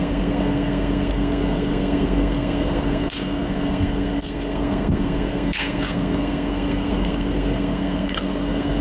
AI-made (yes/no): yes